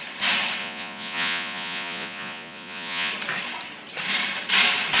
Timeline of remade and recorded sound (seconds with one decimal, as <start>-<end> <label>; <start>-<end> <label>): 0.0-0.6 recorded; 0.6-3.1 remade; 3.1-5.0 recorded